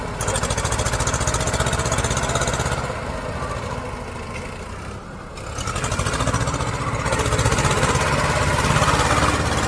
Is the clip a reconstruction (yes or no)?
no